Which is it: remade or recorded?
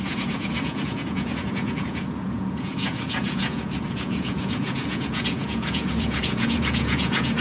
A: remade